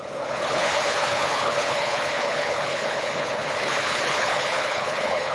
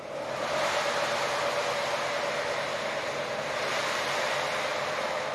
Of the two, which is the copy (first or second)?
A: first